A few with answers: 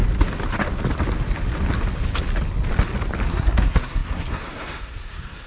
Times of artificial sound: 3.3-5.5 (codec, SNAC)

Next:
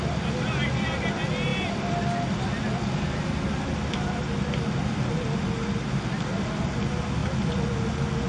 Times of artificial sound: none

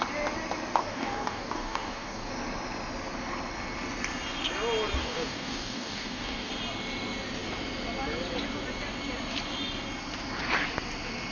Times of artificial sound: 0.8-2.3 (codec, DAC); 5.0-6.5